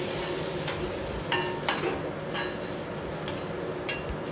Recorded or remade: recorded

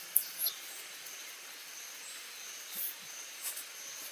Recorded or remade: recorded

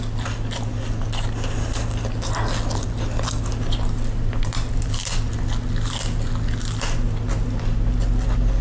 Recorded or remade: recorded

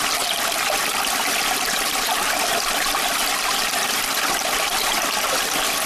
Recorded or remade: recorded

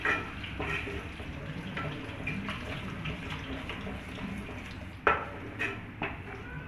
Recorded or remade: recorded